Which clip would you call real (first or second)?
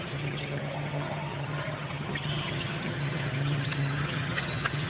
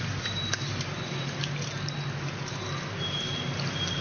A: second